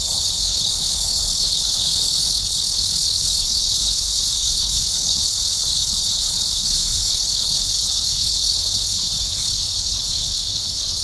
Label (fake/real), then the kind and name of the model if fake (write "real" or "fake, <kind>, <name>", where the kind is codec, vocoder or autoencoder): fake, codec, HILCodec